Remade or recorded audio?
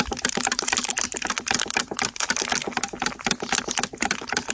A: recorded